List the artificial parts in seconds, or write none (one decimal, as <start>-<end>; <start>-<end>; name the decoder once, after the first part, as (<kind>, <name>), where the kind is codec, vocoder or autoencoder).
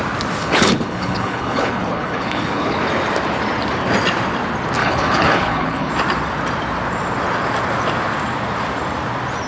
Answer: 0.4-2.8 (codec, HILCodec); 4.8-5.9